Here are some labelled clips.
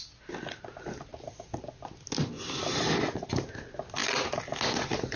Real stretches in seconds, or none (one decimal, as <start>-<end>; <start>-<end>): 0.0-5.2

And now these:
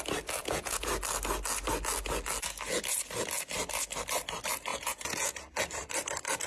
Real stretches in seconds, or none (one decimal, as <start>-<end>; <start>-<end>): 0.0-0.4; 0.9-4.7; 5.4-6.5

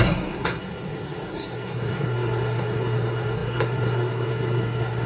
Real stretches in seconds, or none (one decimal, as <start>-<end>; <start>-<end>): none

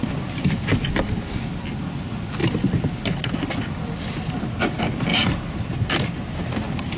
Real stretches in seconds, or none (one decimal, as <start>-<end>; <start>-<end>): 0.0-7.0